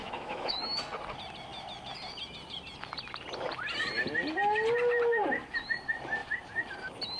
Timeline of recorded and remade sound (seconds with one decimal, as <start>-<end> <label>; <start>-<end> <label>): 0.0-0.8 remade; 0.8-7.2 recorded